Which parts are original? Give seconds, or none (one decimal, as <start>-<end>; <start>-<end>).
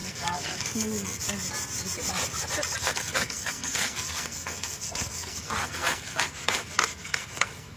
1.2-2.8